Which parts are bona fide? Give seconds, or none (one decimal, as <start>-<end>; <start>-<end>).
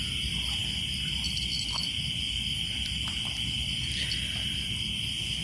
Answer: 0.0-5.4